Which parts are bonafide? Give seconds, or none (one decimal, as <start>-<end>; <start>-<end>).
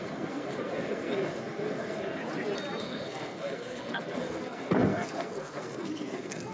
2.2-2.8